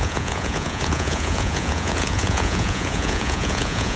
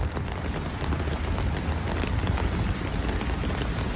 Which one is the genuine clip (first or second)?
second